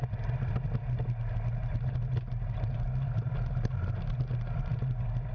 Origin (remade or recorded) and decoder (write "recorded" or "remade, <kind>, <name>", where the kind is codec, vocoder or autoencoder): recorded